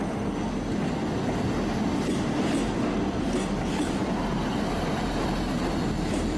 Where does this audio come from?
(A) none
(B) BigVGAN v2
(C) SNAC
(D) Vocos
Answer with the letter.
A